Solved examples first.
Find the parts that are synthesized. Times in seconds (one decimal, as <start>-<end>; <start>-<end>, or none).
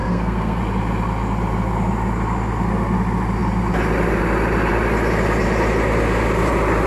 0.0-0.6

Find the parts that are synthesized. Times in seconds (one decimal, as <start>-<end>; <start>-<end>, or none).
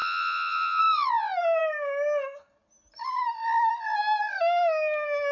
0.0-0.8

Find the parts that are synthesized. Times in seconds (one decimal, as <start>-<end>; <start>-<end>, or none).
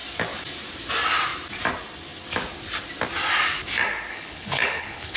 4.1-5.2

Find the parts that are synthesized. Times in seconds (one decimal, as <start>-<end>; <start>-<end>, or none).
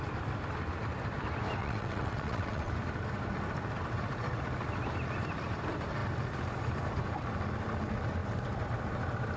1.6-2.7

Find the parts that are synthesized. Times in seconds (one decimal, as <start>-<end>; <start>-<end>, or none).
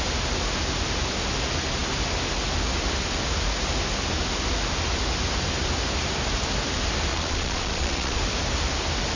7.1-8.2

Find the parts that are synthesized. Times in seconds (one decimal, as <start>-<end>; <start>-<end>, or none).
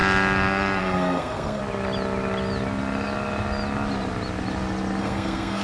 0.8-1.6; 5.0-5.6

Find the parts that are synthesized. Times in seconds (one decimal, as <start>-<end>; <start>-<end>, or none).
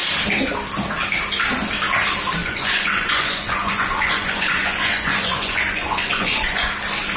2.4-6.7